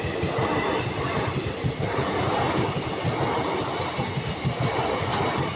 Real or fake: real